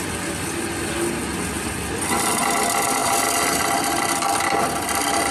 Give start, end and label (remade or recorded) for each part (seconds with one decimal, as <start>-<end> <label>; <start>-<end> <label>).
0.0-5.3 recorded